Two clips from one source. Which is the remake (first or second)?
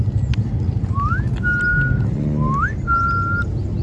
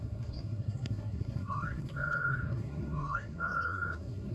second